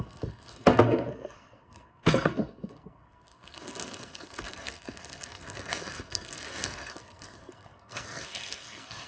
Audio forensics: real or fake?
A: fake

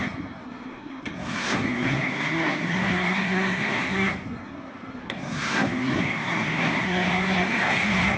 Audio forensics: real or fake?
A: fake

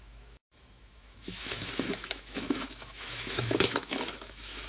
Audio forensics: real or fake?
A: fake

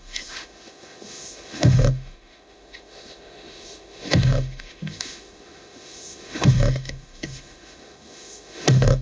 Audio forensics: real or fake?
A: fake